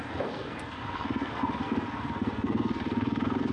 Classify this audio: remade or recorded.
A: remade